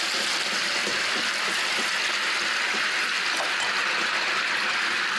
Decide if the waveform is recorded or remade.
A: recorded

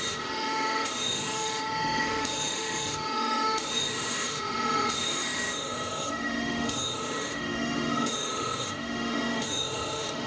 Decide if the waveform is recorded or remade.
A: remade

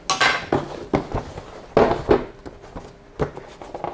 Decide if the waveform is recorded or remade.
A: recorded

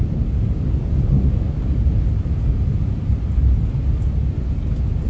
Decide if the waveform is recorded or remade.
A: recorded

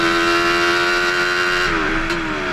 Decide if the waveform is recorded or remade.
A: recorded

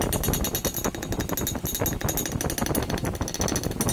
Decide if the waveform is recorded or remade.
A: recorded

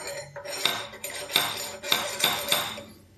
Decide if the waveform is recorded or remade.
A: recorded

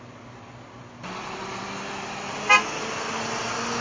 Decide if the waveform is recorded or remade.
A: recorded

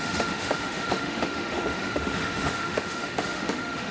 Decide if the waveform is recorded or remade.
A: remade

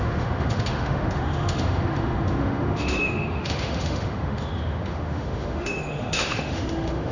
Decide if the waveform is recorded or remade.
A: remade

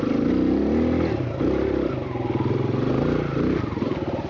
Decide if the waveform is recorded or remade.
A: recorded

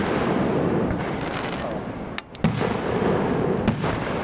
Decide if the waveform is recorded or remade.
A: recorded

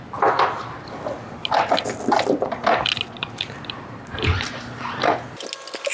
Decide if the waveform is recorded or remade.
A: recorded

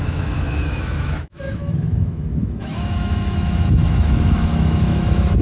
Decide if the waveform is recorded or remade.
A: remade